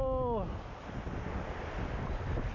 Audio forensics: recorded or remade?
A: recorded